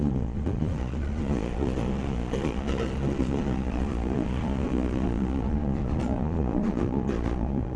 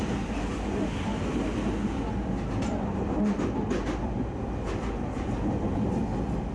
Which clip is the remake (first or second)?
first